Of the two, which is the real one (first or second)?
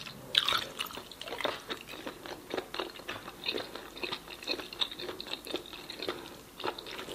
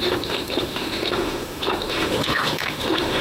first